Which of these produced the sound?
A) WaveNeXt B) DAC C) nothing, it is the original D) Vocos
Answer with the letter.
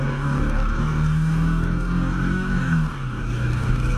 B